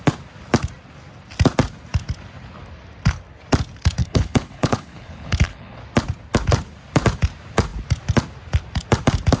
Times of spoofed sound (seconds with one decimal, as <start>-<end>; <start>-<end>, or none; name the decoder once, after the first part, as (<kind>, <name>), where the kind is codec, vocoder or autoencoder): 4.0-5.8 (codec, HILCodec)